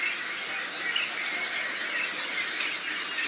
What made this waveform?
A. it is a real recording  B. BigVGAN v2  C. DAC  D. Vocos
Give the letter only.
A